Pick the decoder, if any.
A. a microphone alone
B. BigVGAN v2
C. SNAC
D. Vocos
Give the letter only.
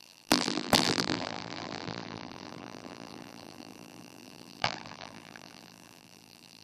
B